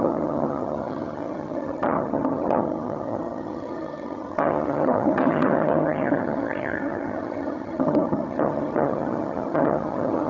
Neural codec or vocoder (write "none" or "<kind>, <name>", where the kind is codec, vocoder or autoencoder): vocoder, HiFi-GAN